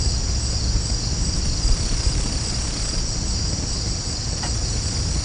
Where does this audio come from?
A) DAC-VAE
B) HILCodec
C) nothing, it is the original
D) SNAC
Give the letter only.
C